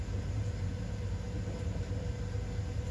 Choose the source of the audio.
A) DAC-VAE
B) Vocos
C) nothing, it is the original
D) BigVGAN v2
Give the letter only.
C